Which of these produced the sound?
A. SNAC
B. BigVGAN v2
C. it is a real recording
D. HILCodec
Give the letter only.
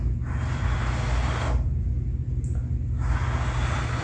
C